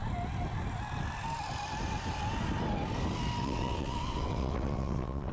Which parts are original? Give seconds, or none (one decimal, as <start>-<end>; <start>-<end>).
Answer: 0.0-3.4